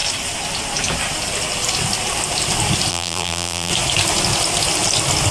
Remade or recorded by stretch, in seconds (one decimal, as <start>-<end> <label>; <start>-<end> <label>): 0.0-2.9 recorded; 2.9-3.7 remade; 3.7-5.3 recorded